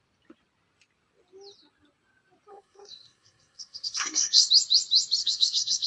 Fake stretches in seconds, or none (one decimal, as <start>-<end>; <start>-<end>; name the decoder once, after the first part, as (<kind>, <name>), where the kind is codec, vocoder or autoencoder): 2.5-4.5 (codec, SNAC); 5.2-5.9